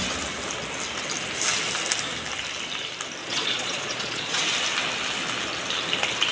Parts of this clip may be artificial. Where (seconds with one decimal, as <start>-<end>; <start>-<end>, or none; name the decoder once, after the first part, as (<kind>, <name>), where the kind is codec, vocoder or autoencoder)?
3.2-4.4 (vocoder, Vocos)